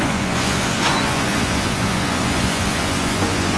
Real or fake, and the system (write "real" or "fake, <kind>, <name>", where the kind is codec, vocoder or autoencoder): fake, vocoder, Vocos